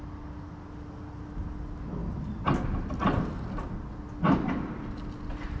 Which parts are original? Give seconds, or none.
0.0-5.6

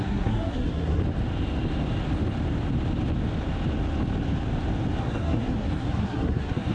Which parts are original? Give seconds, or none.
1.0-5.0

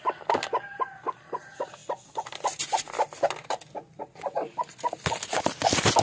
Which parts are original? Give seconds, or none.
0.0-6.0

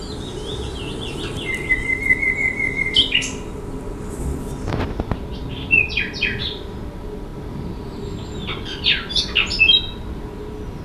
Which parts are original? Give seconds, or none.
0.0-10.8